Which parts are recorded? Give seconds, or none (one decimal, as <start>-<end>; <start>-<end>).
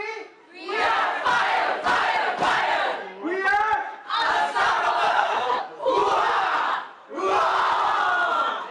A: 0.0-5.1; 5.6-8.7